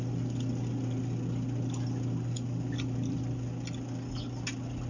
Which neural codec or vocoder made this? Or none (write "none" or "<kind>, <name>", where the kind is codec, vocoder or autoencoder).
none